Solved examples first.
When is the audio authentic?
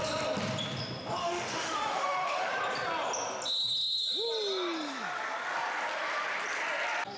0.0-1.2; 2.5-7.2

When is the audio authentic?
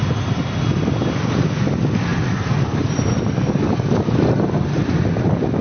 0.0-5.6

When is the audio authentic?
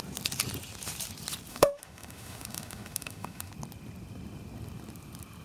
0.0-1.5; 3.5-5.4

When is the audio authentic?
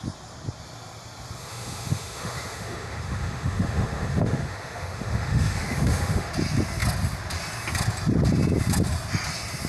0.0-1.4; 6.3-9.7